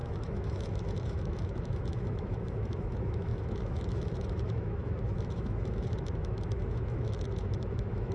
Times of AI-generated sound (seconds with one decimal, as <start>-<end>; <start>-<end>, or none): 0.0-8.1